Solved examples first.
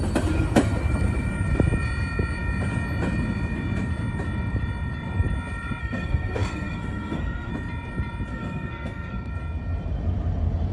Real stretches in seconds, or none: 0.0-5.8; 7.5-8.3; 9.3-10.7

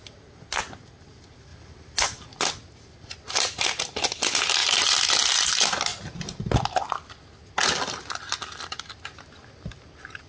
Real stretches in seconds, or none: 0.0-10.3

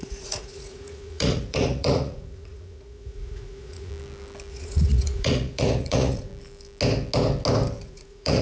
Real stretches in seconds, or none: 3.9-4.5; 6.3-7.8